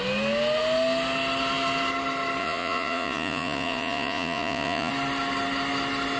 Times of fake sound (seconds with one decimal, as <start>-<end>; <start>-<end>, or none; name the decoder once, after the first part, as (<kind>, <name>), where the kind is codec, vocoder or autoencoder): 2.4-4.9 (vocoder, Vocos)